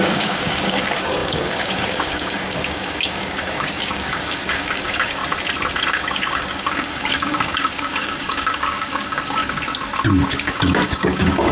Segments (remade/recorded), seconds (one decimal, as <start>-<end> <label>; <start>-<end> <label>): 0.0-5.2 remade; 5.2-5.9 recorded; 5.9-9.4 remade; 9.4-10.3 recorded; 10.3-11.5 remade